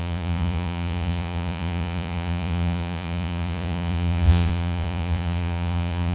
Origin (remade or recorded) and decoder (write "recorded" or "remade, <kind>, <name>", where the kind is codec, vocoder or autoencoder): remade, vocoder, Vocos